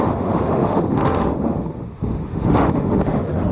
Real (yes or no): no